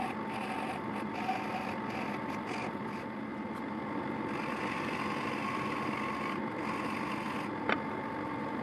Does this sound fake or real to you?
real